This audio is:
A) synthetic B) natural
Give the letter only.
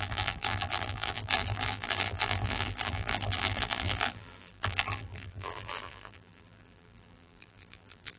A